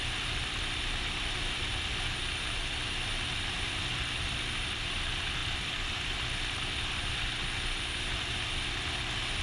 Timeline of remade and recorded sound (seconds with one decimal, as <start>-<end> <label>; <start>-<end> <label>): 0.0-0.4 recorded; 0.4-1.9 remade; 1.9-3.9 recorded; 3.9-4.8 remade; 4.8-5.4 recorded; 5.4-7.3 remade; 7.3-9.4 recorded